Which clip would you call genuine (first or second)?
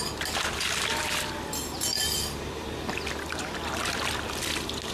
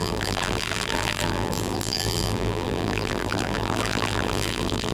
first